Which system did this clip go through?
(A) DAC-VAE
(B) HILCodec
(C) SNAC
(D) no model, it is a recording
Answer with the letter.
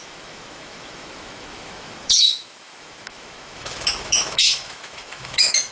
A